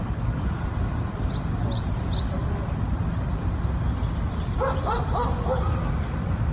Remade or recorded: recorded